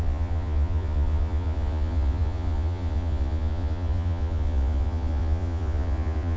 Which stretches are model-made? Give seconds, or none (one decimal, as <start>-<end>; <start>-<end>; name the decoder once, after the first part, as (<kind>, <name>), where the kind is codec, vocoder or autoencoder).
0.0-6.4 (vocoder, Vocos)

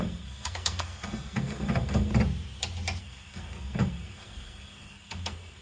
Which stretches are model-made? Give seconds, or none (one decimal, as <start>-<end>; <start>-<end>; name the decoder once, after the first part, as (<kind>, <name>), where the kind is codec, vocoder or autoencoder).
0.0-2.1 (codec, SNAC); 3.0-5.6

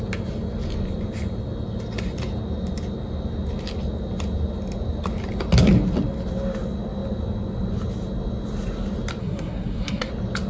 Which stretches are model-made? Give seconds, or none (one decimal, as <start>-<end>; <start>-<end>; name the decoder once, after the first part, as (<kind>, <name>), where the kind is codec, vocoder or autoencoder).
9.2-10.1 (codec, SNAC)

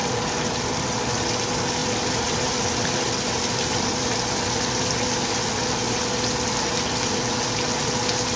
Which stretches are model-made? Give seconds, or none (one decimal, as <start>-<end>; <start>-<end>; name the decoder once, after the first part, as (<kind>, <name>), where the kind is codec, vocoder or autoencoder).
0.0-1.4 (vocoder, BigVGAN v2); 1.8-5.8

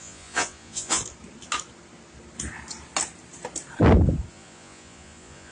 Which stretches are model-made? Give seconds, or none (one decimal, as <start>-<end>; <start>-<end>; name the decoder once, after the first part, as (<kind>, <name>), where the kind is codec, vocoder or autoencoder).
0.0-1.0 (vocoder, Vocos); 4.3-5.5

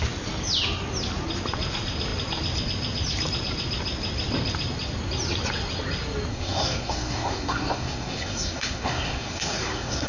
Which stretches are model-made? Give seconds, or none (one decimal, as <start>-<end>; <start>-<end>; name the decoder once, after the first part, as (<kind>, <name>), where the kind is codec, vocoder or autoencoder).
6.3-10.1 (codec, SNAC)